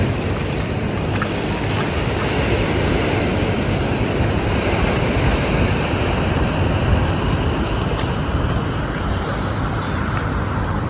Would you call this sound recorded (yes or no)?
yes